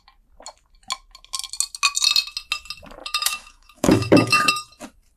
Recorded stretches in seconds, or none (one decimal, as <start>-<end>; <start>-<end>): 0.0-3.0; 4.5-5.2